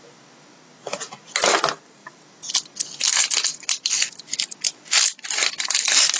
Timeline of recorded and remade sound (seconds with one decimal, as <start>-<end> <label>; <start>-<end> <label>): 0.0-2.0 recorded; 2.0-4.4 remade; 4.4-6.2 recorded